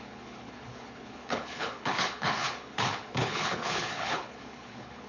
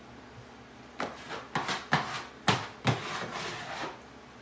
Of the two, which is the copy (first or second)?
first